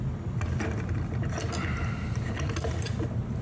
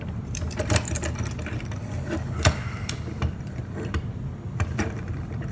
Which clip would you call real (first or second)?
first